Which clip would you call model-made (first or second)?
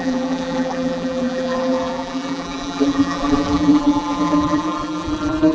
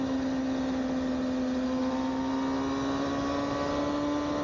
first